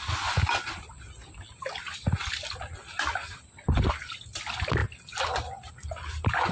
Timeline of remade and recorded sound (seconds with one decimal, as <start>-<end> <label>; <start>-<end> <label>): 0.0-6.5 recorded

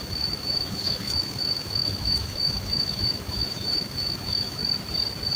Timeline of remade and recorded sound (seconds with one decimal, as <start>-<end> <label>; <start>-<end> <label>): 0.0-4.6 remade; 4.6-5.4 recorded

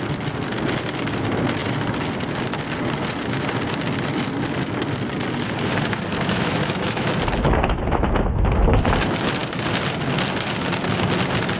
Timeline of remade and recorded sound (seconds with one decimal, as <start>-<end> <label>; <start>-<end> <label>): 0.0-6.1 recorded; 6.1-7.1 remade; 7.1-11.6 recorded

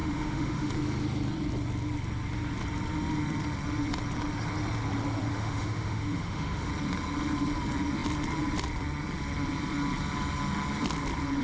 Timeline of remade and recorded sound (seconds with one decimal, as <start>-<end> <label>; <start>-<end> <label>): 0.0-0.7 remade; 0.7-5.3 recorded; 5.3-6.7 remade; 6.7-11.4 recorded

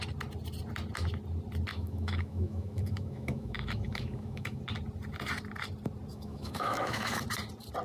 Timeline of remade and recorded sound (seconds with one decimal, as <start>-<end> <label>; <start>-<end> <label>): 0.0-1.7 recorded; 1.7-4.6 remade; 4.6-6.1 recorded; 6.1-7.2 remade; 7.2-7.8 recorded

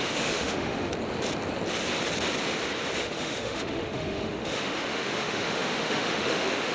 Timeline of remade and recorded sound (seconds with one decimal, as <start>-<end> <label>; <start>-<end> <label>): 0.0-0.9 remade; 0.9-3.0 recorded; 3.0-6.7 remade